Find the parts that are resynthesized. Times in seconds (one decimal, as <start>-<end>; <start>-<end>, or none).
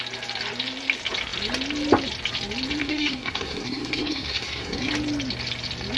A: 2.8-4.9